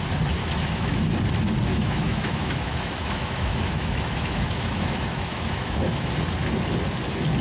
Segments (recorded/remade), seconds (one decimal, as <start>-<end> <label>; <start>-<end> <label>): 0.0-0.4 recorded; 0.4-1.0 remade; 1.0-1.7 recorded; 1.7-6.1 remade; 6.1-7.4 recorded